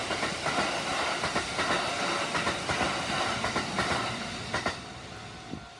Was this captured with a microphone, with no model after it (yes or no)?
yes